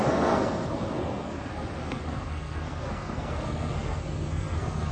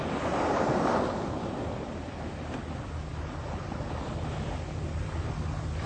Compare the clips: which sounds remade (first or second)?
first